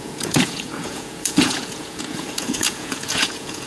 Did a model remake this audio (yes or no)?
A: yes